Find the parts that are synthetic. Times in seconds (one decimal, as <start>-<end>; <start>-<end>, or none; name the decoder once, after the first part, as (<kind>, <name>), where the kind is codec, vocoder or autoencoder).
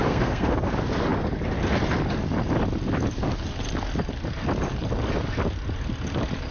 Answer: 0.0-0.7 (codec, SNAC)